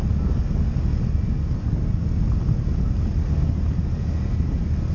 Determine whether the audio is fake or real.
real